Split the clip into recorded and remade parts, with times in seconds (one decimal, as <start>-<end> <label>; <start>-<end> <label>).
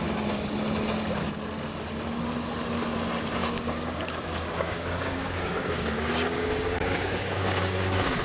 0.0-3.4 recorded; 3.4-8.2 remade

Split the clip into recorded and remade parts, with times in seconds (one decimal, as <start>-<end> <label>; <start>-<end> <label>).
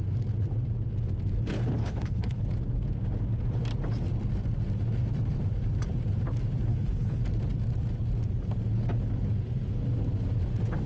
0.0-1.8 recorded; 1.8-2.4 remade; 2.4-6.7 recorded; 6.7-7.2 remade; 7.2-10.9 recorded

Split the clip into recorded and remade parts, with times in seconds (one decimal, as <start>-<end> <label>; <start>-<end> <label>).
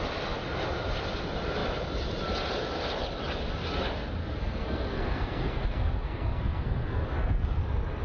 0.0-4.2 recorded; 4.2-7.6 remade; 7.6-8.0 recorded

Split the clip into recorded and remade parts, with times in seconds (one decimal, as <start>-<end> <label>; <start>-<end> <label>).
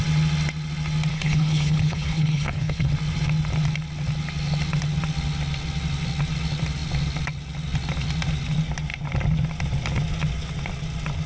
0.0-1.1 recorded; 1.1-2.9 remade; 2.9-11.3 recorded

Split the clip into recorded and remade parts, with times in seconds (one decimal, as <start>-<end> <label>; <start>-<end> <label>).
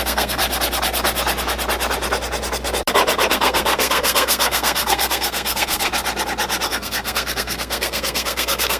0.0-0.4 remade; 0.4-3.3 recorded; 3.3-5.9 remade; 5.9-6.7 recorded; 6.7-8.8 remade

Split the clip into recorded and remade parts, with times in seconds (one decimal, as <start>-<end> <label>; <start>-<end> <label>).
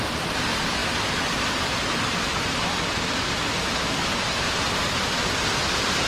0.0-6.1 recorded